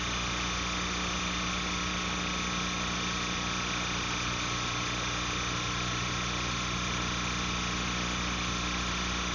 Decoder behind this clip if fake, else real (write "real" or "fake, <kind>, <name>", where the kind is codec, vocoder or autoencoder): real